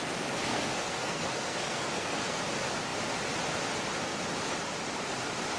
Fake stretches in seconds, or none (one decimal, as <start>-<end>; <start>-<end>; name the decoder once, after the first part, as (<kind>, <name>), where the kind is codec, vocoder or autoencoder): 0.5-2.4 (codec, SNAC)